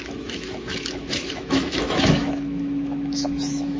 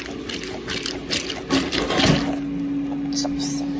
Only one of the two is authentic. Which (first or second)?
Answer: second